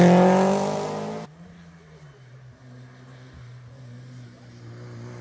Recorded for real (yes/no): yes